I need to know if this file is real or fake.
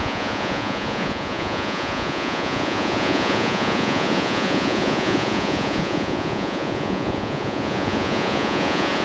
fake